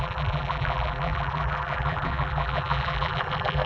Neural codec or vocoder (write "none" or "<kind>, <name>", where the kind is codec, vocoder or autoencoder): vocoder, BigVGAN v2